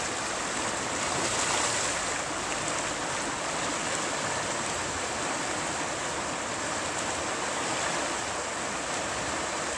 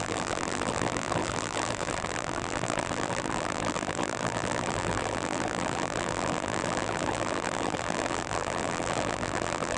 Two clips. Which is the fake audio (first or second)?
second